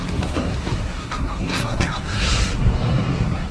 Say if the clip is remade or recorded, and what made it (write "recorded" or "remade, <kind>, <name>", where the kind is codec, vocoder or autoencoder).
remade, codec, SNAC